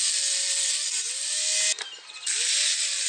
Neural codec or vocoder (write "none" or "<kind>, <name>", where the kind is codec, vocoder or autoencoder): none